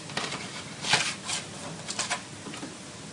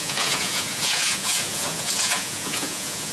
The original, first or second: first